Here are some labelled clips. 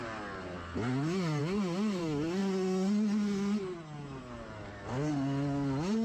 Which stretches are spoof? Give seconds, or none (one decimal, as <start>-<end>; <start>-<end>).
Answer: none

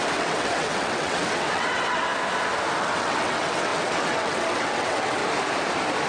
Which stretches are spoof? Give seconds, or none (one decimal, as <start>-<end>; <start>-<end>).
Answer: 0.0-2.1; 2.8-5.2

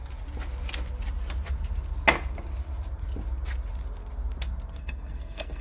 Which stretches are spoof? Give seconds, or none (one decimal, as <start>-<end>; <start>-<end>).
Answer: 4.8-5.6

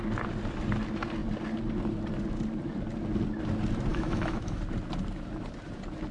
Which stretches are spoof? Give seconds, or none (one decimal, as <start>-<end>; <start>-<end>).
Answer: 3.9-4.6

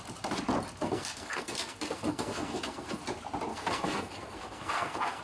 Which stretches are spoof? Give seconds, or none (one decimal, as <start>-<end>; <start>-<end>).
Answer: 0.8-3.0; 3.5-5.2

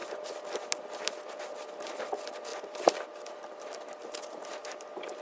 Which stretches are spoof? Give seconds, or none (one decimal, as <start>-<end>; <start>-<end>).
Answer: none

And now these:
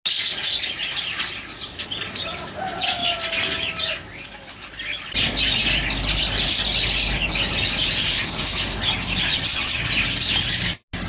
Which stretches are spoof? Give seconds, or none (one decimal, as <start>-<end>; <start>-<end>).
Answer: 9.3-9.9